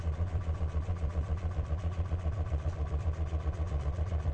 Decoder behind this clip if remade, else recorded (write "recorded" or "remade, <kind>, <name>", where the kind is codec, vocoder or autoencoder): remade, vocoder, Vocos